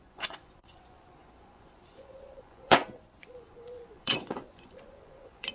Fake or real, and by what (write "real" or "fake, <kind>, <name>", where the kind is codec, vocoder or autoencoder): fake, vocoder, Vocos